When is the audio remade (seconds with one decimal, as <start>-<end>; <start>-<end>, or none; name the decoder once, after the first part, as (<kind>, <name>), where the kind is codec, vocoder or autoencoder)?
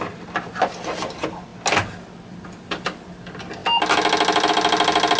none